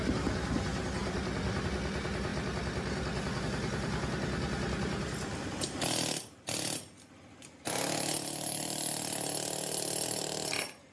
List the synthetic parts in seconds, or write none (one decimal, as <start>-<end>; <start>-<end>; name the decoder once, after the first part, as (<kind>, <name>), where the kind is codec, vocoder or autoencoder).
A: none